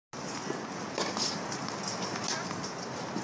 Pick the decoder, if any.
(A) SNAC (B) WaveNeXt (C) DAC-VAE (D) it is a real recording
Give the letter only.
D